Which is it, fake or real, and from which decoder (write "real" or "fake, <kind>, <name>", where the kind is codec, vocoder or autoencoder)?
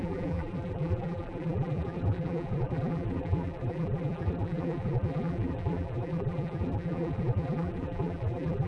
fake, vocoder, BigVGAN v2